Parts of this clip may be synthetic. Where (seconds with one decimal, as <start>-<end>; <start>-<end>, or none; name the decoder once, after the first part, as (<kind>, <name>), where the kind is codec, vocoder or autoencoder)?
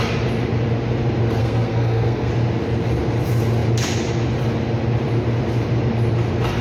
1.4-2.3 (codec, SNAC)